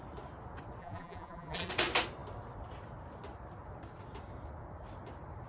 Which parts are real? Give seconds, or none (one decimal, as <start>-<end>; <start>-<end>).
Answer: 0.0-0.8; 1.7-5.5